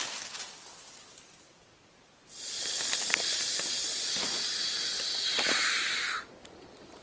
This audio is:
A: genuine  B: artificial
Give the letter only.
A